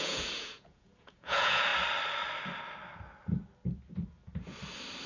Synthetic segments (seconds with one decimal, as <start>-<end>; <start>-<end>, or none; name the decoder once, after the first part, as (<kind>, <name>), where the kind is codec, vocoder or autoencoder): 0.0-1.7 (vocoder, Vocos)